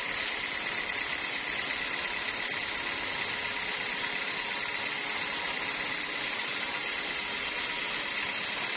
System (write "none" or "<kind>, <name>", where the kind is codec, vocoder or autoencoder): none